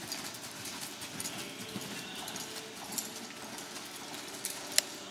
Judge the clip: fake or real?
real